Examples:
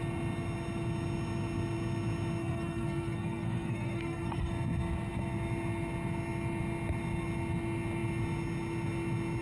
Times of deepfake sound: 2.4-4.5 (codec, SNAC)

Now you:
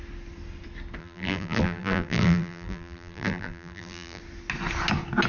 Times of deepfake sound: 1.0-4.2 (vocoder, BigVGAN v2)

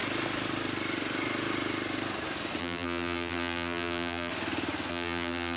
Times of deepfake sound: 2.6-4.3 (vocoder, BigVGAN v2); 4.9-5.6

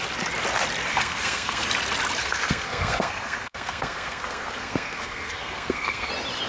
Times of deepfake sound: 0.9-1.6 (codec, SNAC); 2.2-6.1